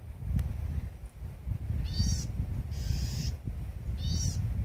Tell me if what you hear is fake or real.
real